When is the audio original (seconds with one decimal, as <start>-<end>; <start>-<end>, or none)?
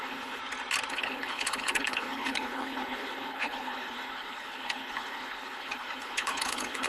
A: 0.4-0.9